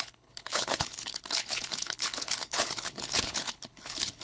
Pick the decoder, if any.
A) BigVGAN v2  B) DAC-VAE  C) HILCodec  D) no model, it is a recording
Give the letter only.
C